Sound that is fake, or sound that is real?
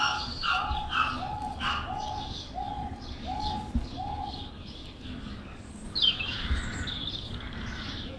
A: fake